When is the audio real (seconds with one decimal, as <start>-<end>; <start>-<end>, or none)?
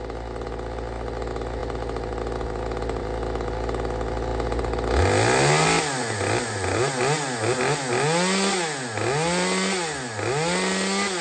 0.0-11.2